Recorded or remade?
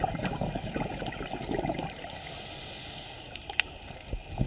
recorded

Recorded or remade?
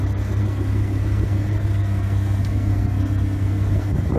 remade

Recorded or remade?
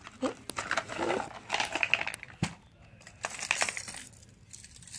recorded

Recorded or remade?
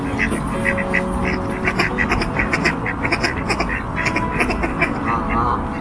recorded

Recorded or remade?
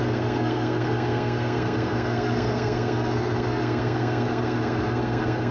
remade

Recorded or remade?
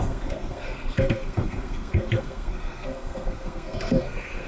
remade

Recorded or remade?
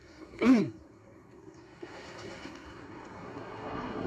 remade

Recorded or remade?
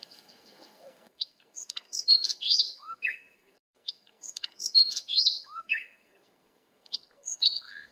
remade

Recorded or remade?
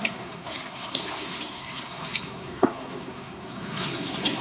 remade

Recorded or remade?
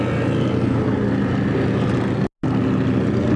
recorded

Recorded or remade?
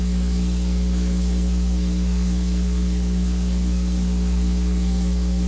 remade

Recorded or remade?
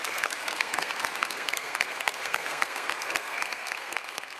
remade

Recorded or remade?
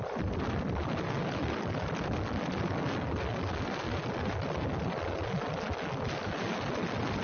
recorded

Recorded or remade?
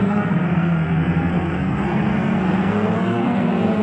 remade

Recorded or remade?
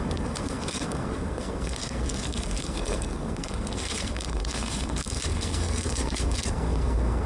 remade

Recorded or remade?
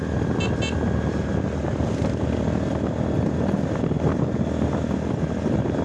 recorded